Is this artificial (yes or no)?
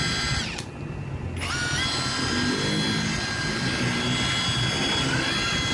no